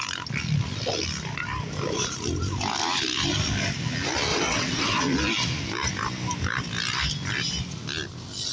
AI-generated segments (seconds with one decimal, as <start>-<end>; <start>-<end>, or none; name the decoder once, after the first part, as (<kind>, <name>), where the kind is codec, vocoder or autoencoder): 4.3-5.0 (vocoder, WaveNeXt)